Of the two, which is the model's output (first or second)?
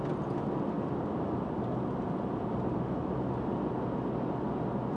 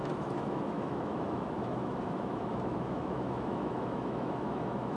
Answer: second